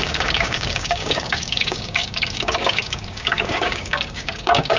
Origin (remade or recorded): remade